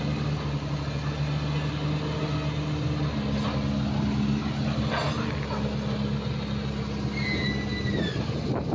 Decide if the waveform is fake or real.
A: real